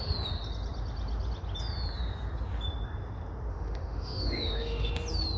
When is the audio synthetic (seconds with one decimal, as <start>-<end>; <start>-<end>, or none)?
3.5-4.9